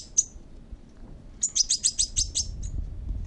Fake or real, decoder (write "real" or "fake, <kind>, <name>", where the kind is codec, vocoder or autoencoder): real